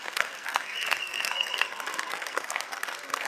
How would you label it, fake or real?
fake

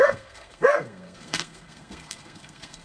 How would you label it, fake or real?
fake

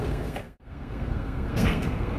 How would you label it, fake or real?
fake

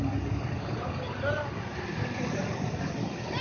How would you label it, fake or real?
real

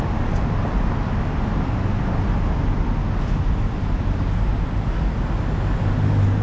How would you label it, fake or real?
real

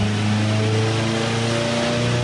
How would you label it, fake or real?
real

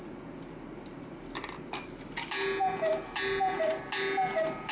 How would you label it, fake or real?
real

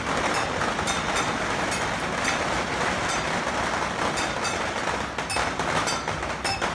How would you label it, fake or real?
real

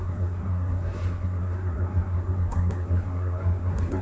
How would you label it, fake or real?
fake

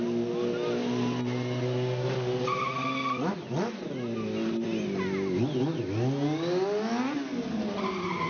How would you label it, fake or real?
real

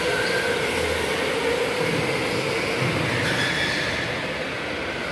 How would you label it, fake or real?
real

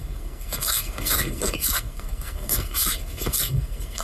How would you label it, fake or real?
fake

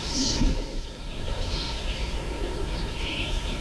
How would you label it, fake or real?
fake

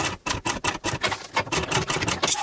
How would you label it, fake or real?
real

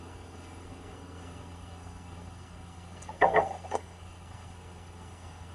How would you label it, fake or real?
fake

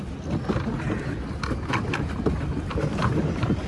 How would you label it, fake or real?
real